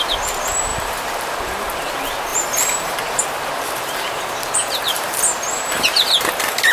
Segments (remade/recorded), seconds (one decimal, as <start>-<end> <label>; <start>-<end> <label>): 0.0-0.7 recorded; 0.7-1.9 remade; 1.9-2.3 recorded; 2.3-6.3 remade; 6.3-6.7 recorded